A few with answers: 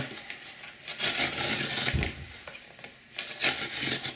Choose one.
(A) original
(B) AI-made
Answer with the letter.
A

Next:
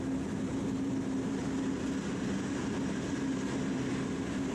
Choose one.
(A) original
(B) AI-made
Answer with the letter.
A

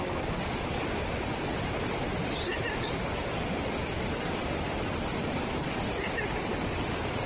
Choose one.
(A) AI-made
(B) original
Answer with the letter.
B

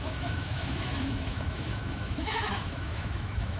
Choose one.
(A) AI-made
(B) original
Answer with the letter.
A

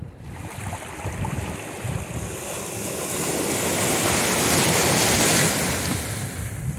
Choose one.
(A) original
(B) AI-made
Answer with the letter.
A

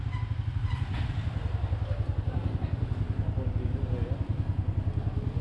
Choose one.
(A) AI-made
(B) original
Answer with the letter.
B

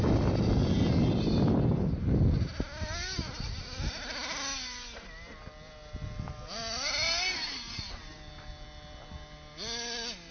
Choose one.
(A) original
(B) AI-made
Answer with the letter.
A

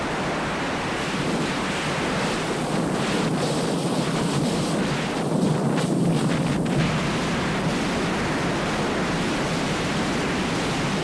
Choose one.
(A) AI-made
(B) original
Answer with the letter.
B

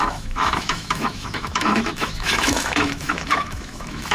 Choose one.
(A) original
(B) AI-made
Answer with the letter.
B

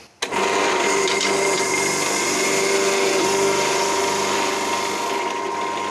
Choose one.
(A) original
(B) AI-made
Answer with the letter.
A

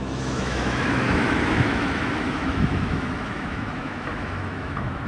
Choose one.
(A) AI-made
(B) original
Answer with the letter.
A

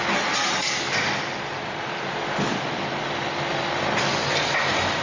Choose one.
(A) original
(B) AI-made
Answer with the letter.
A